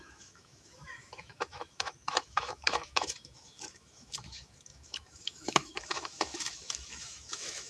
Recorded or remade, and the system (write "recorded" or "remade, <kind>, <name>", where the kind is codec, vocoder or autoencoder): remade, autoencoder, DAC-VAE